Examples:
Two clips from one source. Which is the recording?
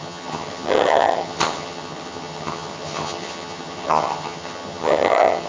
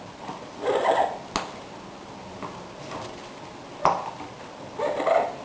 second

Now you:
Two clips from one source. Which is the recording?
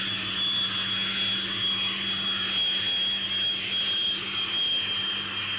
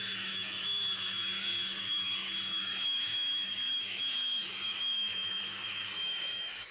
first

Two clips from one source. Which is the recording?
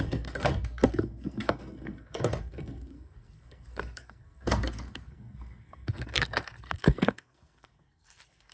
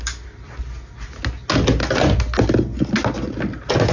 second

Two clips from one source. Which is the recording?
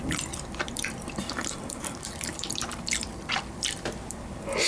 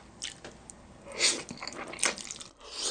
second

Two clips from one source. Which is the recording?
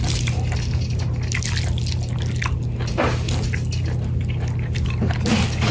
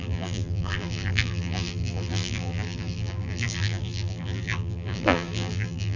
first